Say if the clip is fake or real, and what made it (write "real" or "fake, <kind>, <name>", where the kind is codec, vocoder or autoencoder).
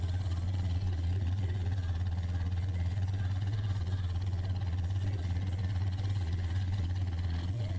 fake, vocoder, Vocos